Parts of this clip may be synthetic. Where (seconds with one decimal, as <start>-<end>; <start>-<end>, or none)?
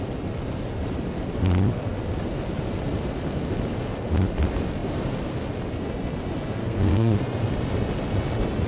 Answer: 6.6-7.2